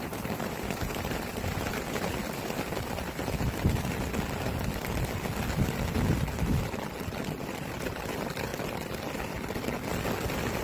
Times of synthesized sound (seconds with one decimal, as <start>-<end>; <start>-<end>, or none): 0.0-2.2; 7.4-8.5